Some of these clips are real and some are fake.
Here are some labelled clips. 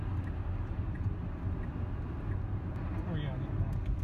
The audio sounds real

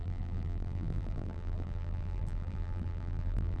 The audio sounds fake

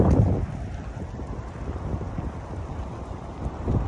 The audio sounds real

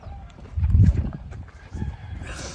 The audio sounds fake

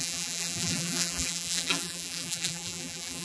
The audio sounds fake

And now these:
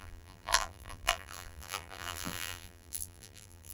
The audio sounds fake